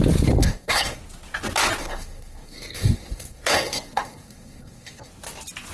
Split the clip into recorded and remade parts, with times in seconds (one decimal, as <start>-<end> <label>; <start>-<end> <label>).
0.0-0.4 recorded; 0.4-1.0 remade; 1.0-1.8 recorded; 1.8-5.1 remade; 5.1-5.7 recorded